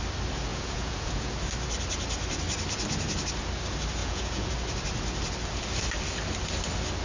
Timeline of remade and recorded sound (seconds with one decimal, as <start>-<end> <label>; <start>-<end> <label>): 0.0-0.5 recorded; 0.5-1.3 remade; 1.3-4.0 recorded; 4.0-4.5 remade; 4.5-7.0 recorded